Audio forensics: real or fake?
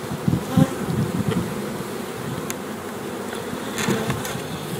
real